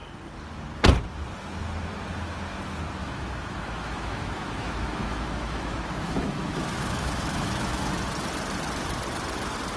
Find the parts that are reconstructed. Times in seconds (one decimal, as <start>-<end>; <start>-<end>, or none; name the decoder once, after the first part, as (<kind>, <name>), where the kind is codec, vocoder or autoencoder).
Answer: 3.0-7.9 (autoencoder, DAC-VAE)